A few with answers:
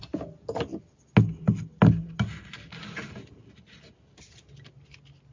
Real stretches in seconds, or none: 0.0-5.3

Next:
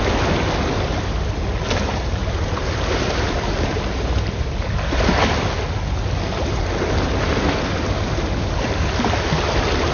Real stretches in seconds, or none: 0.0-2.2; 3.2-9.9

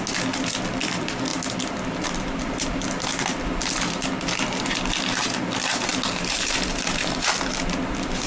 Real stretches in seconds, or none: 0.0-8.3